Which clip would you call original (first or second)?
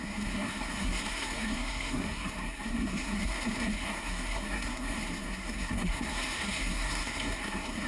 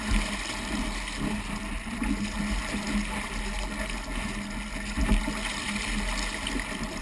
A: second